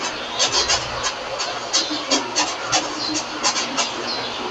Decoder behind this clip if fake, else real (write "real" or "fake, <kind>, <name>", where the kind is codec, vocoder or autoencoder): real